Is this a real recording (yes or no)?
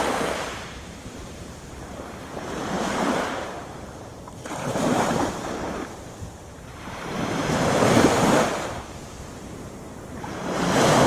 no